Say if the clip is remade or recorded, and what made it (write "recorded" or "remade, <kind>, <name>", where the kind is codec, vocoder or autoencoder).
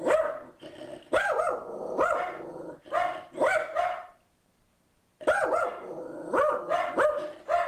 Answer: recorded